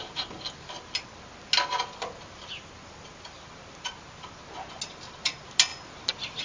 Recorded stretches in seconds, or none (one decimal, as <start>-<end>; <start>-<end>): 0.0-6.4